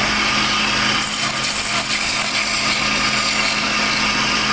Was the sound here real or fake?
real